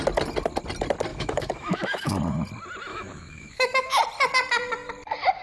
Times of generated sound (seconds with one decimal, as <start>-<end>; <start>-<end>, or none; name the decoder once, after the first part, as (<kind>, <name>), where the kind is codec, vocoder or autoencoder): 1.1-2.2 (autoencoder, DAC-VAE); 2.9-4.0